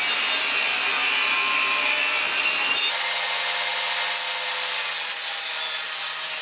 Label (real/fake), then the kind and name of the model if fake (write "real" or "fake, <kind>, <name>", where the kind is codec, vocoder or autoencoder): real